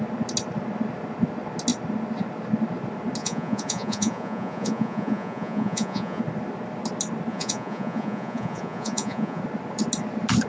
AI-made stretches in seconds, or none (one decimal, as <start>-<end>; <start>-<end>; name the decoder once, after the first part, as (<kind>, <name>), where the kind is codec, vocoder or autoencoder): 3.2-6.2 (vocoder, Vocos); 7.3-9.4